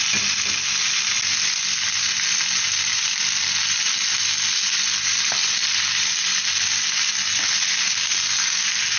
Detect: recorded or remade recorded